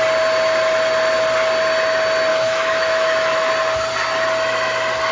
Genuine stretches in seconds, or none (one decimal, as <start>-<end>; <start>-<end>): 0.0-2.3; 3.5-5.1